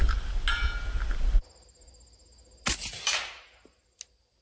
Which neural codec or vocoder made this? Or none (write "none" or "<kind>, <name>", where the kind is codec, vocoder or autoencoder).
none